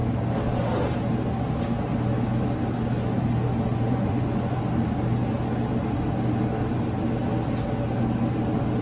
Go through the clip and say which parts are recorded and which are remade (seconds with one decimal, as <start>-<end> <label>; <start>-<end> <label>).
0.0-3.7 recorded; 3.7-4.6 remade; 4.6-8.8 recorded